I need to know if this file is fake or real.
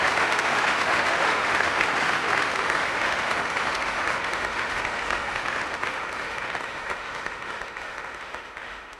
fake